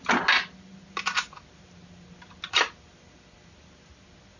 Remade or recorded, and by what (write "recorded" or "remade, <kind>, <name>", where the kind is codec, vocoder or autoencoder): recorded